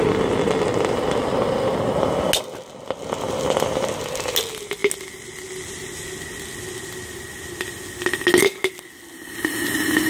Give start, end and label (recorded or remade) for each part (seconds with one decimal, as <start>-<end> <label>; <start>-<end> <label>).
0.0-10.1 recorded